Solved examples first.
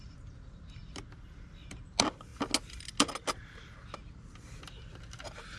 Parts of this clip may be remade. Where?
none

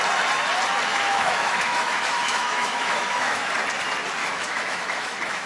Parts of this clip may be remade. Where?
0.9-3.5 (autoencoder, DAC-VAE); 4.2-5.5

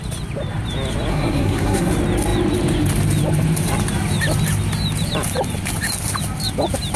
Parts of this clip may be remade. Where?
1.1-1.9 (codec, SNAC)

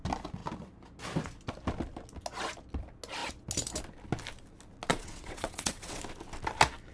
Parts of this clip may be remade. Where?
4.9-6.0 (vocoder, WaveNeXt)